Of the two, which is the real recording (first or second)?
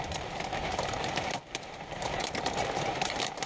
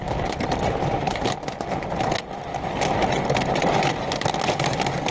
second